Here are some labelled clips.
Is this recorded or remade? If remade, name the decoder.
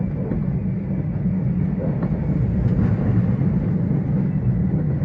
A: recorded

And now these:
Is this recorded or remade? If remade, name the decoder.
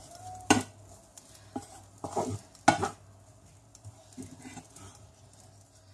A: recorded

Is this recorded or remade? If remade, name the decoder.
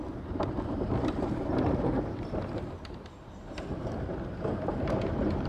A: remade, vocoder, BigVGAN v2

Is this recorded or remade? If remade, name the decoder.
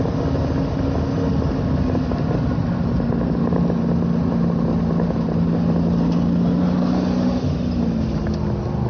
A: recorded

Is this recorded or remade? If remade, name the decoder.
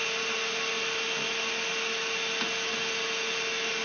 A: recorded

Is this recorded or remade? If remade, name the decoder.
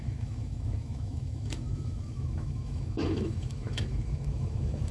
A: remade, autoencoder, DAC-VAE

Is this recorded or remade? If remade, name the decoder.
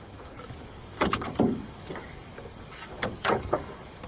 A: remade, codec, DAC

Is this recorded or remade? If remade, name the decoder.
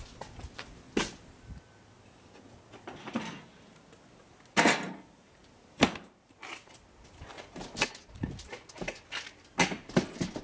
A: recorded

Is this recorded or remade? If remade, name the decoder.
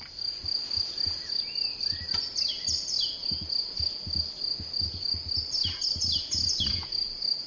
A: recorded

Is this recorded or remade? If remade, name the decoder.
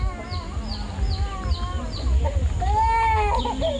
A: recorded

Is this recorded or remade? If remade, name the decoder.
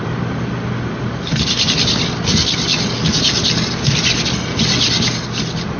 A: recorded